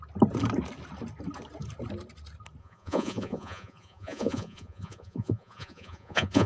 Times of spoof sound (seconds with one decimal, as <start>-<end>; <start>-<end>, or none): 2.6-6.5

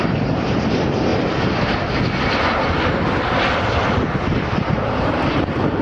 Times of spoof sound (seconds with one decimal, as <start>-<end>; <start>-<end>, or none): 0.0-1.1; 4.6-5.8